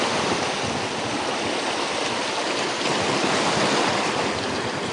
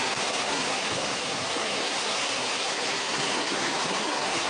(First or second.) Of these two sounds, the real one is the first